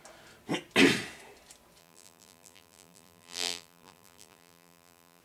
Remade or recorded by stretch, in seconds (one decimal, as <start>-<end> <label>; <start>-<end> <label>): 0.0-1.8 recorded; 1.8-5.2 remade